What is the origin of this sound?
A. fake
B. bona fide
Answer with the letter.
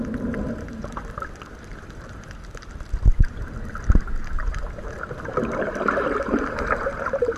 B